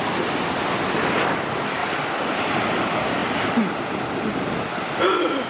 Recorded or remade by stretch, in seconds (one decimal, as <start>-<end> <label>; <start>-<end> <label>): 0.0-5.5 recorded